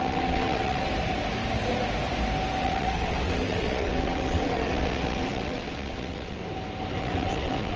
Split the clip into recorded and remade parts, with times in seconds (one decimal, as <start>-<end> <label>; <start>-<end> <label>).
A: 0.0-0.9 remade; 0.9-2.6 recorded; 2.6-6.4 remade; 6.4-7.0 recorded; 7.0-7.8 remade